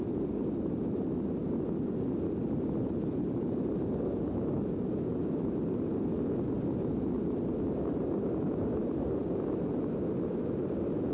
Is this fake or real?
real